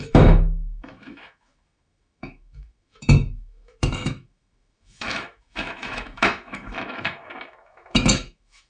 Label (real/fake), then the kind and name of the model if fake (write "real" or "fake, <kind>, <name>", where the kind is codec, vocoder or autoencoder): fake, autoencoder, DAC-VAE